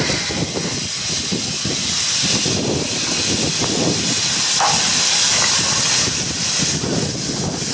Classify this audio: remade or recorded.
recorded